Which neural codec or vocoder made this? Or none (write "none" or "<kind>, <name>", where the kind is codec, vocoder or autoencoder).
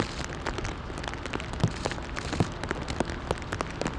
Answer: none